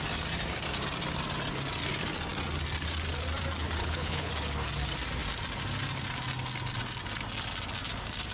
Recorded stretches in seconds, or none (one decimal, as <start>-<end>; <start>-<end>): 0.0-3.8; 4.3-8.3